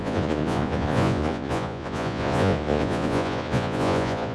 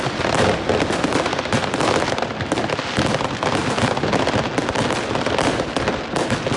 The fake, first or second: first